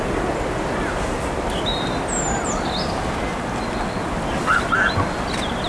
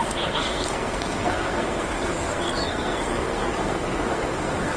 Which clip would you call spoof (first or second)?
second